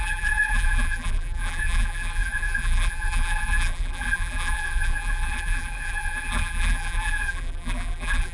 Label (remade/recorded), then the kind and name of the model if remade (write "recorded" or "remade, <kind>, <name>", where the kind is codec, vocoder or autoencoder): remade, vocoder, BigVGAN v2